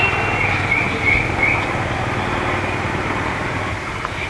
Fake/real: real